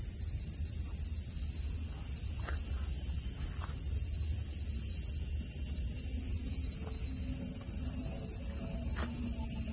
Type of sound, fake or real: real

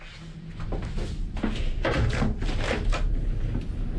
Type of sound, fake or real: real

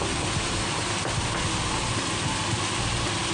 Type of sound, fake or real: real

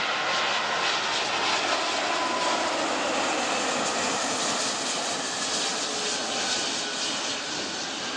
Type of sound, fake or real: real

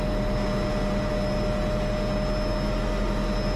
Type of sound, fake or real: real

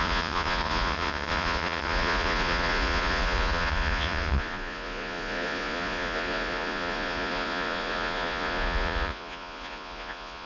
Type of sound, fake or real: fake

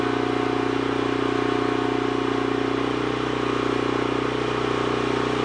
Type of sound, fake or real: real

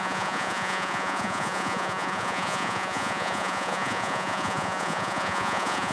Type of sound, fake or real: fake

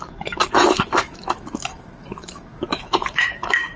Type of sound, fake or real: fake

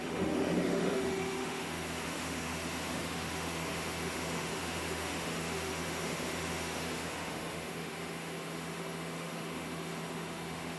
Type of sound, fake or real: fake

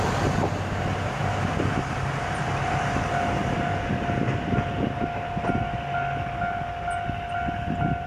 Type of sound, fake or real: real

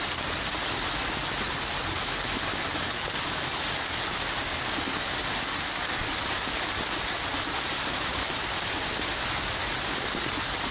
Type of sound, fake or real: real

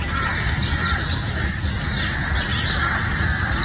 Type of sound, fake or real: fake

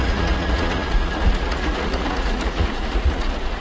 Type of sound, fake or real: fake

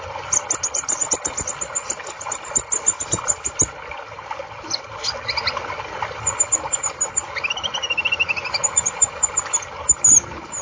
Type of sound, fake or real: real